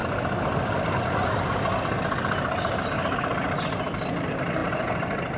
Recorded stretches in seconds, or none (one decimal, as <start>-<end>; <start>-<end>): 0.0-5.4